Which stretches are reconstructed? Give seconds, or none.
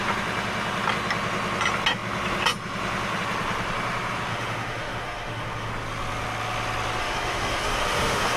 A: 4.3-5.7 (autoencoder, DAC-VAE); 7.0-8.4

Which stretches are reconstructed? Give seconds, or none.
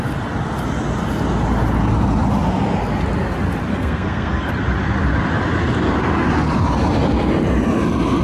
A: 3.7-4.5 (codec, SNAC)